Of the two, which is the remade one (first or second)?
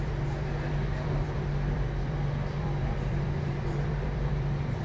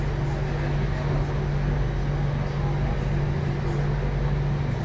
first